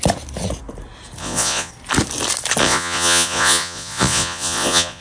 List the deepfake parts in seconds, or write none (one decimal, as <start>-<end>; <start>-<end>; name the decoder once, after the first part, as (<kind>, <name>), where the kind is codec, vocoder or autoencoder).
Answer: 1.2-1.7 (vocoder, Vocos); 2.6-5.0